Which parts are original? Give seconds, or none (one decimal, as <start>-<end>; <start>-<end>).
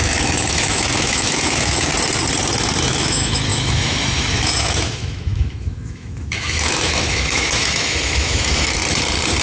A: 1.9-2.8; 8.8-9.4